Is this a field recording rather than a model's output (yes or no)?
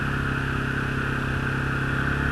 yes